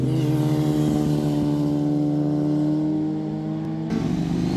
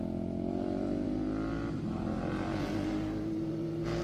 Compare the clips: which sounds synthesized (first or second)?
second